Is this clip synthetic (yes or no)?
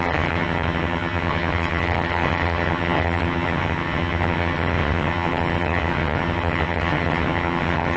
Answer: yes